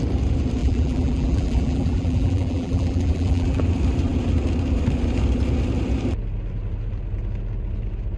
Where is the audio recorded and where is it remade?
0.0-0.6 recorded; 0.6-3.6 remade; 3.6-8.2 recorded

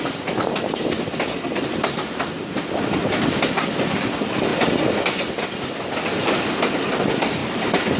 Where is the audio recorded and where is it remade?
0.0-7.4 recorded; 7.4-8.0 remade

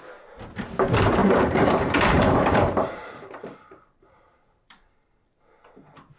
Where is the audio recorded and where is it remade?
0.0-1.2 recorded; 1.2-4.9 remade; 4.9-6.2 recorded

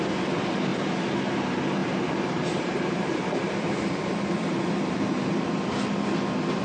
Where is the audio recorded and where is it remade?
0.0-1.8 recorded; 1.8-5.5 remade; 5.5-6.6 recorded

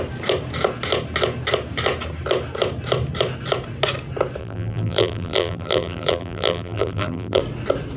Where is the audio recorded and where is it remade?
0.0-4.4 recorded; 4.4-7.4 remade; 7.4-8.0 recorded

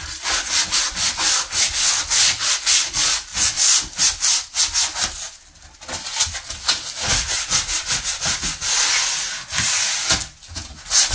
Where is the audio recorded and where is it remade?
0.0-11.1 recorded

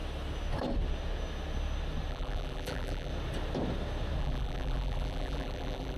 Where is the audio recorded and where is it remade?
0.0-2.1 recorded; 2.1-3.1 remade; 3.1-4.2 recorded; 4.2-6.0 remade

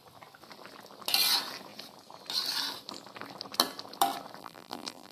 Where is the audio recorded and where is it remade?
0.0-4.4 recorded; 4.4-5.1 remade